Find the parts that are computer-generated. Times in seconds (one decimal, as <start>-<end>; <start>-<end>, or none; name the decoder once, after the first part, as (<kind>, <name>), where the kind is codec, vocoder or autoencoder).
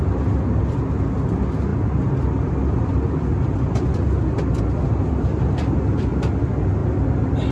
none